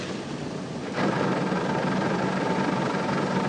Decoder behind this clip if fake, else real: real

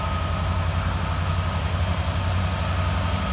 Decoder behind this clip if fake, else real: real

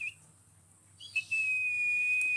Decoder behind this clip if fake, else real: real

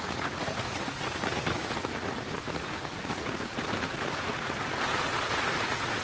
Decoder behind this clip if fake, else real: fake, vocoder, Vocos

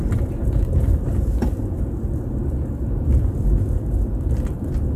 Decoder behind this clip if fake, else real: fake, vocoder, BigVGAN v2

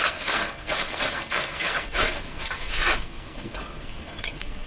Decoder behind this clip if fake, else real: fake, codec, SNAC